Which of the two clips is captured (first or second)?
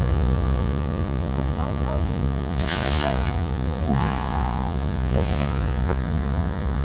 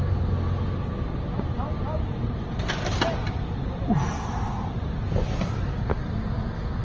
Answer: second